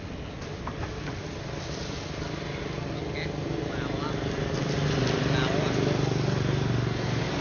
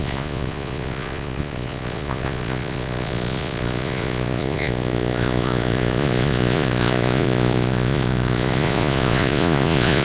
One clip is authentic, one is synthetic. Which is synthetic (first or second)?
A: second